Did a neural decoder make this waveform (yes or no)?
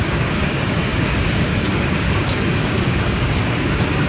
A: yes